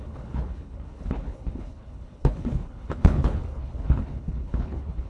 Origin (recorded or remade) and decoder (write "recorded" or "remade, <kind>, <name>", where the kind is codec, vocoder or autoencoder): remade, codec, HILCodec